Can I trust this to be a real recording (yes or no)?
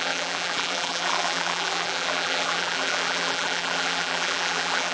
no